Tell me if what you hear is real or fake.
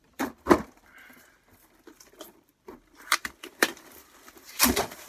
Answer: fake